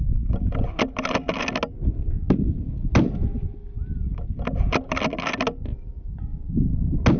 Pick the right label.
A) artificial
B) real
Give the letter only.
B